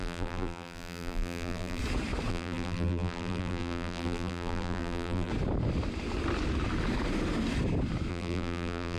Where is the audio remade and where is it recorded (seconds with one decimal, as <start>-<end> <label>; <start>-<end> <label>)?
0.0-1.8 remade; 1.8-2.3 recorded; 2.3-5.3 remade; 5.3-8.1 recorded; 8.1-9.0 remade